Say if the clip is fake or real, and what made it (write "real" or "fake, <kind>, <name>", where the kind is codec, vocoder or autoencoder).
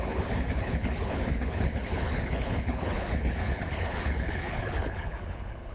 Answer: fake, codec, HILCodec